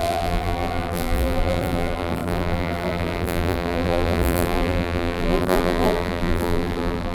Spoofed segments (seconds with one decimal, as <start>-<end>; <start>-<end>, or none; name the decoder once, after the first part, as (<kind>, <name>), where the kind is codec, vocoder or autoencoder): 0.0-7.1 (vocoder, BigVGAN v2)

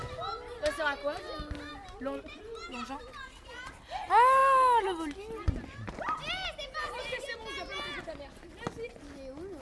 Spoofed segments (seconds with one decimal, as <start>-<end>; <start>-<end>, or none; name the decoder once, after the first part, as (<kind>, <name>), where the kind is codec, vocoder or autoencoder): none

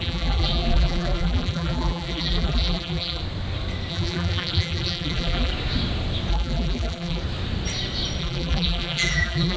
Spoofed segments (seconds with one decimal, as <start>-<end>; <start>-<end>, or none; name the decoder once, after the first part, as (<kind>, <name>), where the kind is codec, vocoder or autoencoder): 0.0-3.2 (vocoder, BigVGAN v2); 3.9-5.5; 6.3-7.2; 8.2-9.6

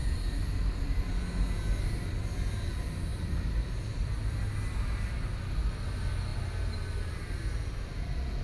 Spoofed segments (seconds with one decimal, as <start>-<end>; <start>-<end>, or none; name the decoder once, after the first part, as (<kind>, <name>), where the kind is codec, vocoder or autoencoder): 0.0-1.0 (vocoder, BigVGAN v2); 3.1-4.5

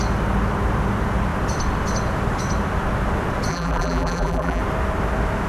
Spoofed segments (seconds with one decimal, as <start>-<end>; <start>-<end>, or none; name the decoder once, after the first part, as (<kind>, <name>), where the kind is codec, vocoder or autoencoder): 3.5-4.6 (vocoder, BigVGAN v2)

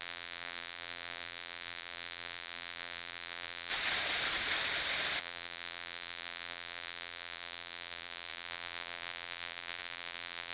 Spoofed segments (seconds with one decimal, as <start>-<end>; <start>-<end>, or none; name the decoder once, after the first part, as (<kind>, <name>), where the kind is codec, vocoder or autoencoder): 0.0-3.7 (vocoder, BigVGAN v2); 5.2-10.5

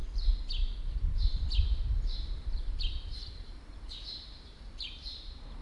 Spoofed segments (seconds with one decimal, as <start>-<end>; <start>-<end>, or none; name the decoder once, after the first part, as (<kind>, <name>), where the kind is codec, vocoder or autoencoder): 0.0-5.6 (vocoder, BigVGAN v2)

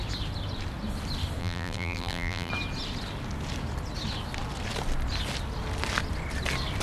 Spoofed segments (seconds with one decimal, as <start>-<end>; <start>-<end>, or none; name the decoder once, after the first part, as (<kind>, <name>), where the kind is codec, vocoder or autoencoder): 1.4-2.5 (vocoder, BigVGAN v2)